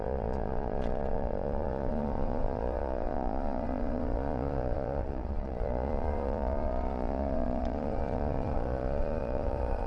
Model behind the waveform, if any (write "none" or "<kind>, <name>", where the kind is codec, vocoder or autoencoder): vocoder, Vocos